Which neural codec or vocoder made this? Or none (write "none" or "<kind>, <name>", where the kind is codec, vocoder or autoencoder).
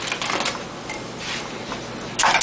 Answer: none